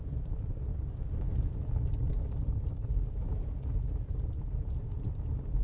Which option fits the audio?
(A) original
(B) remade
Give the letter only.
A